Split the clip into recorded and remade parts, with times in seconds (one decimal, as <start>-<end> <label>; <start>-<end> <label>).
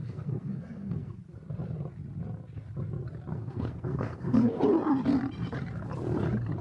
0.0-1.2 remade; 1.2-3.3 recorded; 3.3-4.6 remade; 4.6-6.6 recorded